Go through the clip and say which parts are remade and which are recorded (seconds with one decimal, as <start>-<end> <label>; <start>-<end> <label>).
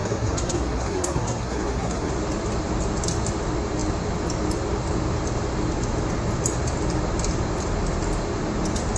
0.0-2.1 remade; 2.1-9.0 recorded